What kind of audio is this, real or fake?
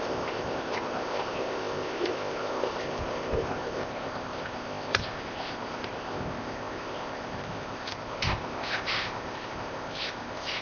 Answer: fake